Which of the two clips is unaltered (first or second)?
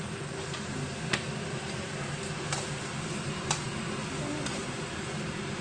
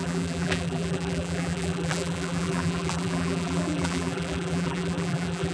first